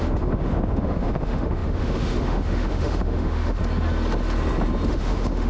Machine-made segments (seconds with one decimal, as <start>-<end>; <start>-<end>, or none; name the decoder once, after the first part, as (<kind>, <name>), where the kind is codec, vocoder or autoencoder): 0.0-3.6 (autoencoder, DAC-VAE); 4.9-5.5